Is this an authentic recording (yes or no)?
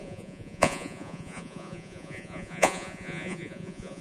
no